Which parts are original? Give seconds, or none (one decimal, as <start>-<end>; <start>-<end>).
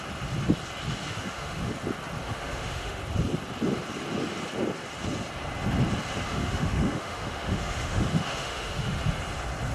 0.0-1.1; 1.7-2.2; 3.0-6.3; 9.0-9.7